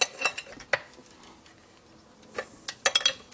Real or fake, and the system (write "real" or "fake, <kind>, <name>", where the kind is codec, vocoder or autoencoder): real